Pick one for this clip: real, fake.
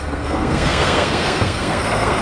fake